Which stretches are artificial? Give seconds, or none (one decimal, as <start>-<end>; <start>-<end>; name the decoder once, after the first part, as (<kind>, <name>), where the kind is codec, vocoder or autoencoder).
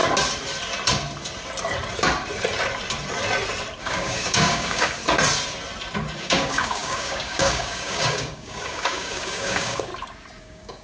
3.8-5.0 (codec, DAC); 6.2-9.9; 10.4-10.8